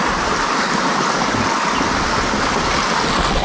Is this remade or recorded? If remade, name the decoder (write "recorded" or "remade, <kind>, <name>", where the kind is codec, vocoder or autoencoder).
recorded